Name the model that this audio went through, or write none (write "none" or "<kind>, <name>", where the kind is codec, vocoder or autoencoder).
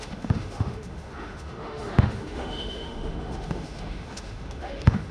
autoencoder, DAC-VAE